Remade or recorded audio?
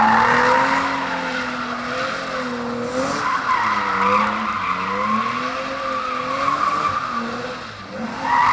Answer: recorded